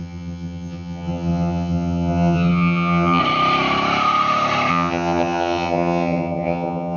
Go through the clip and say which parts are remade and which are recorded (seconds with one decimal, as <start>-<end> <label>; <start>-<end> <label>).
0.0-3.2 remade; 3.2-4.7 recorded; 4.7-7.0 remade